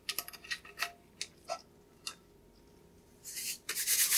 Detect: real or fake real